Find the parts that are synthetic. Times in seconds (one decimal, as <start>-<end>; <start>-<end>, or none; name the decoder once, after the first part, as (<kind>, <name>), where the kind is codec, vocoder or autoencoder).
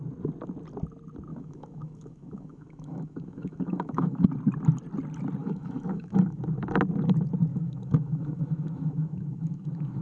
1.3-4.3 (autoencoder, DAC-VAE); 5.4-6.4; 7.5-10.0